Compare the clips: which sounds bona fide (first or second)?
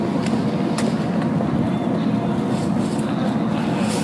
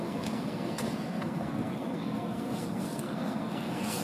first